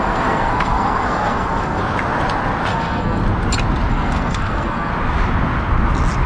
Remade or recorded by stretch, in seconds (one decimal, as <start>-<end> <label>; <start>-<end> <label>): 0.0-1.8 remade; 1.8-2.7 recorded; 2.7-3.2 remade; 3.2-3.9 recorded; 3.9-4.9 remade; 4.9-6.3 recorded